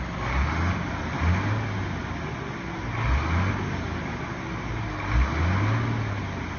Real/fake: real